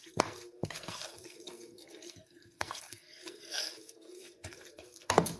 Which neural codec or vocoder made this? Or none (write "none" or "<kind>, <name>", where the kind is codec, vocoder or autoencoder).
codec, SNAC